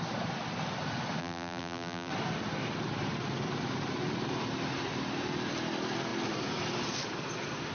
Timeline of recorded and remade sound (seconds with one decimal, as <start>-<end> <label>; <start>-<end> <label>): 0.0-1.2 recorded; 1.2-2.1 remade; 2.1-7.7 recorded